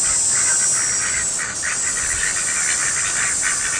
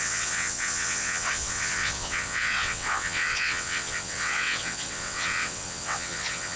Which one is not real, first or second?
second